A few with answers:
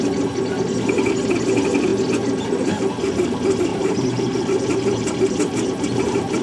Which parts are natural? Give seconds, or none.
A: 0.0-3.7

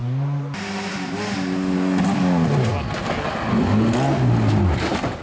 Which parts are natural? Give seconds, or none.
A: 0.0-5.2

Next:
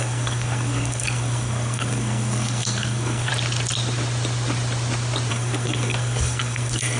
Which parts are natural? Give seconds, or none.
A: 3.3-5.3

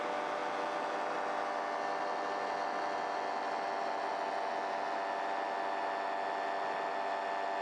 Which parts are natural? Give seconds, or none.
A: 0.0-7.6

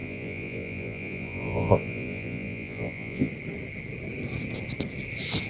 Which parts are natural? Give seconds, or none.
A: 3.3-5.5

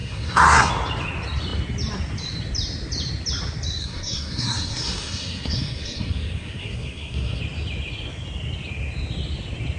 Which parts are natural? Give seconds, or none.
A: 0.7-3.8; 7.4-9.8